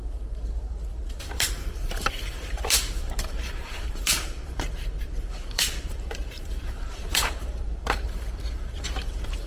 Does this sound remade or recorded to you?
remade